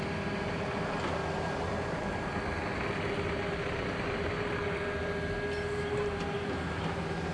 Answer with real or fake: real